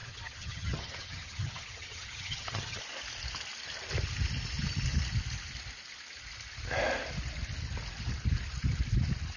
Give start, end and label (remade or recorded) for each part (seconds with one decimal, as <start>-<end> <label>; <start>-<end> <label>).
0.0-2.8 remade; 2.8-9.4 recorded